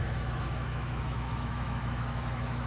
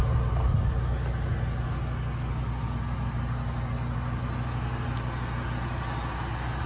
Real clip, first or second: second